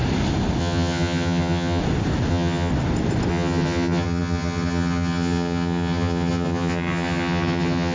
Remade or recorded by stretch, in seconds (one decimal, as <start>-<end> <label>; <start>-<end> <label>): 0.0-0.6 recorded; 0.6-1.8 remade; 1.8-2.3 recorded; 2.3-2.7 remade; 2.7-3.3 recorded; 3.3-7.9 remade